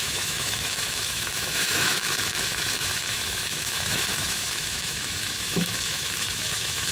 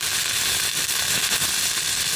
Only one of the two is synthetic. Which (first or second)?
first